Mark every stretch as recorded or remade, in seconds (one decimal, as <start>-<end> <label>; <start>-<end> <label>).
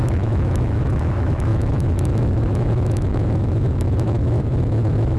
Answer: 0.0-5.2 remade